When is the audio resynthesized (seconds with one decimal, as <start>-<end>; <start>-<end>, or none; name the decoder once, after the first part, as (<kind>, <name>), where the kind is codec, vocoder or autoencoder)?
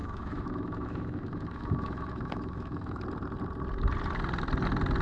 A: 0.0-3.0 (autoencoder, DAC-VAE)